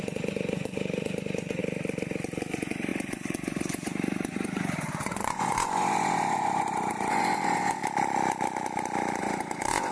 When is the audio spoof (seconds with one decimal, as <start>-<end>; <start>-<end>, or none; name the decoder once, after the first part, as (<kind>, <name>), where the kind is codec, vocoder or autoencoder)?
0.0-1.6 (vocoder, Vocos); 2.5-7.8; 9.2-9.9